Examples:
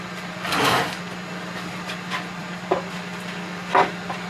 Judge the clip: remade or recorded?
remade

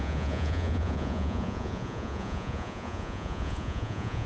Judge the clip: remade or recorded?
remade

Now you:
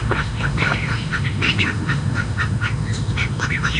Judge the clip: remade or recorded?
remade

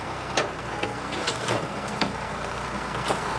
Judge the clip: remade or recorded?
remade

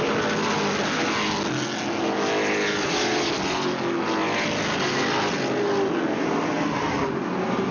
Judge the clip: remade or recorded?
recorded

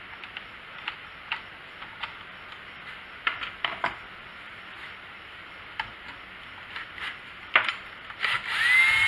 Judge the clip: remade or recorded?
recorded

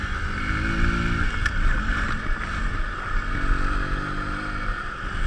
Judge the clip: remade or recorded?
recorded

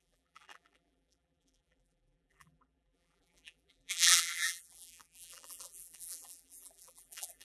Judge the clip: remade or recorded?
remade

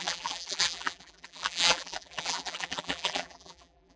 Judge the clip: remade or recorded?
remade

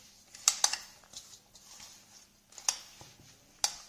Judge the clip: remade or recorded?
recorded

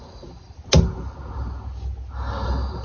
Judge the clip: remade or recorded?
recorded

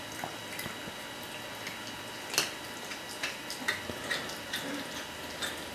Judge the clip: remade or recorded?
recorded